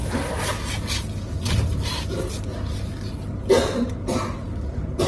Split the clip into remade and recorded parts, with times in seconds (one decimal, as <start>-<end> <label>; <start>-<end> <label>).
0.0-3.1 recorded; 3.1-5.1 remade